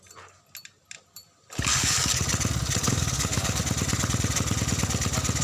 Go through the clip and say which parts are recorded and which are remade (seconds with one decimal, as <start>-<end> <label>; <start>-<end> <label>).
0.0-1.7 recorded; 1.7-2.2 remade; 2.2-2.8 recorded; 2.8-3.6 remade; 3.6-5.4 recorded